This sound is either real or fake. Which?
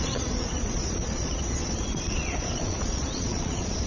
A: fake